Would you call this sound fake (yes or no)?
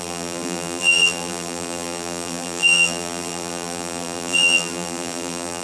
yes